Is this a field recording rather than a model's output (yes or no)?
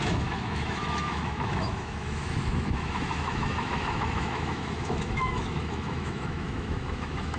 no